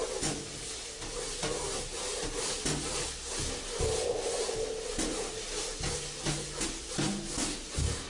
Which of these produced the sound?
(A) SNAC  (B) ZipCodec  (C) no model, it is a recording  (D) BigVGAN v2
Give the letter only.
C